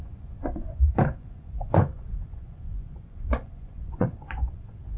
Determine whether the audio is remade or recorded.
remade